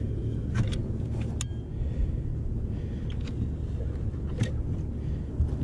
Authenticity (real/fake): real